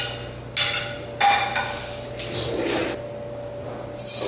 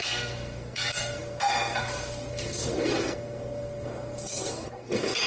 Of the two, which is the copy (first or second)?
second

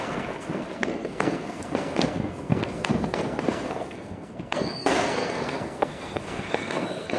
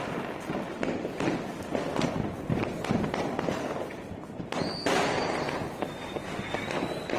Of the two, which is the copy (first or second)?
first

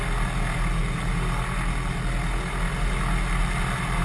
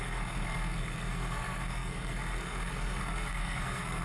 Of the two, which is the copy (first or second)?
second